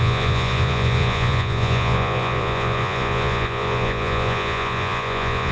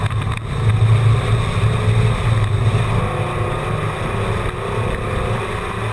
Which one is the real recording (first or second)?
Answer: second